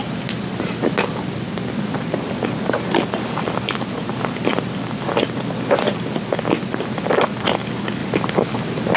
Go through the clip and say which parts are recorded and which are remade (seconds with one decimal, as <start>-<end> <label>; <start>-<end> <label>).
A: 0.0-9.0 recorded